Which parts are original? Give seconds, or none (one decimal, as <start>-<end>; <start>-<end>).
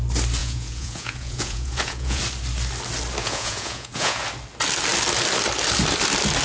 0.0-0.4; 2.2-3.2; 4.2-6.4